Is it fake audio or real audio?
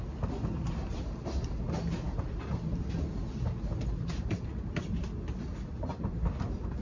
real